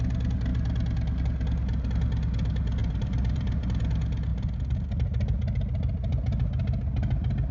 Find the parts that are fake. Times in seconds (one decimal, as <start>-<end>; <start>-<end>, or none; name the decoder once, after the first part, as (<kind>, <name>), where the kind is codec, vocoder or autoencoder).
2.8-3.8 (vocoder, BigVGAN v2)